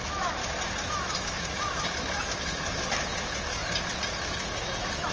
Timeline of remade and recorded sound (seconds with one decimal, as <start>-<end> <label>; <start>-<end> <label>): 0.0-0.4 remade; 0.4-0.9 recorded; 0.9-3.6 remade; 3.6-4.3 recorded; 4.3-5.1 remade